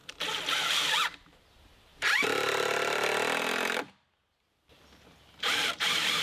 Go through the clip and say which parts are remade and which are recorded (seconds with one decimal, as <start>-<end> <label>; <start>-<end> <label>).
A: 0.0-1.5 recorded; 1.5-1.9 remade; 1.9-5.4 recorded; 5.4-6.2 remade